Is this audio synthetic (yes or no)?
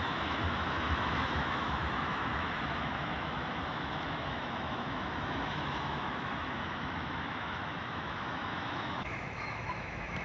yes